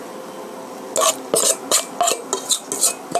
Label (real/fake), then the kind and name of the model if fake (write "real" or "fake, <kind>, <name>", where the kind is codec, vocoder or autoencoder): real